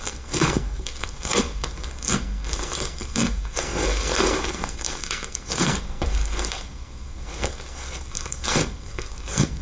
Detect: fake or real fake